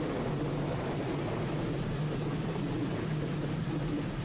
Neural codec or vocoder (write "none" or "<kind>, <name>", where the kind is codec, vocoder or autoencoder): none